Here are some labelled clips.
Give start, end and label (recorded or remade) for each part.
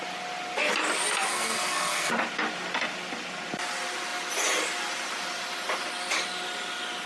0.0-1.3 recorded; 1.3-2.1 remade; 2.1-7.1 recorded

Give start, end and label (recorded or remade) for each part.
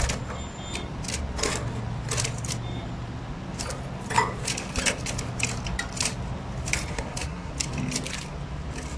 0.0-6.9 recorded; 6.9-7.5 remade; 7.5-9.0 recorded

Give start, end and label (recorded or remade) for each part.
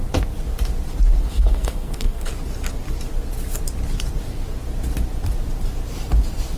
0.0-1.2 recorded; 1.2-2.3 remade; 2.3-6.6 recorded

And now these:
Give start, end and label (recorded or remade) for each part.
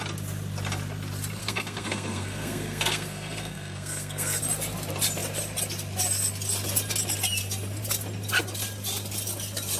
0.0-1.4 recorded; 1.4-4.4 remade; 4.4-9.8 recorded